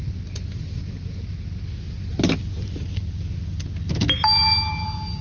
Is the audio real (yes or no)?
yes